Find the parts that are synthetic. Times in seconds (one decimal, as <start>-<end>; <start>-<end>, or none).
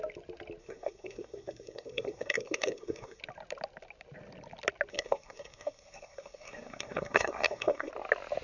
0.6-3.2; 4.9-7.9